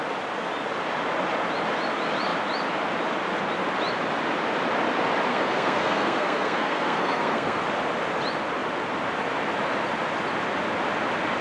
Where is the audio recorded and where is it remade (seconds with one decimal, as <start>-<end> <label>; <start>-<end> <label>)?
0.0-5.3 recorded; 5.3-7.6 remade; 7.6-11.4 recorded